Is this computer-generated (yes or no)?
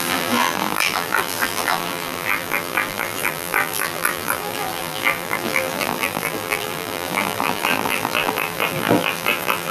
yes